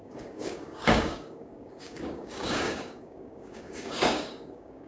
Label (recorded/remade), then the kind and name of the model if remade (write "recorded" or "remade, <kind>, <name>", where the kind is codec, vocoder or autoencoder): remade, codec, DAC